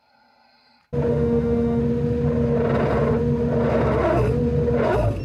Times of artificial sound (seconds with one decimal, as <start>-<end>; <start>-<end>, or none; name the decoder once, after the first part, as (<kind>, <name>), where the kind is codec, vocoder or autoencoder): 1.1-1.8 (autoencoder, DAC-VAE)